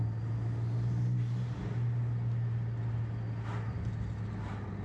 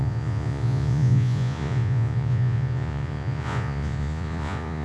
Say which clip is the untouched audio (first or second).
first